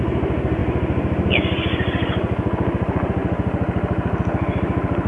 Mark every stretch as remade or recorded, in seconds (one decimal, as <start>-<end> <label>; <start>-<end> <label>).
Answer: 0.0-5.1 recorded